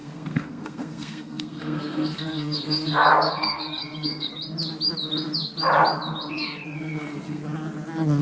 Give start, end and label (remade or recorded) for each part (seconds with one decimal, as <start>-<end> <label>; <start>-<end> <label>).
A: 0.0-4.3 remade; 4.3-6.3 recorded; 6.3-7.4 remade; 7.4-8.2 recorded